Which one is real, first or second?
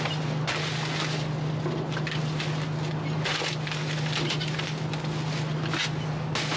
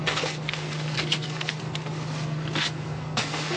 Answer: first